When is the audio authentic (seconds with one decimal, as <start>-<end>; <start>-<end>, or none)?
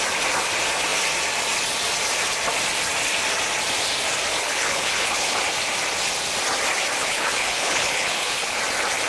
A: 0.0-4.3; 5.4-7.0; 8.6-9.1